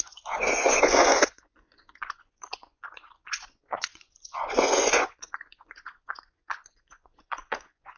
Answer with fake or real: fake